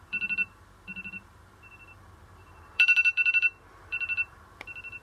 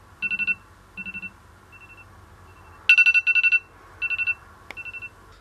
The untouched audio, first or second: second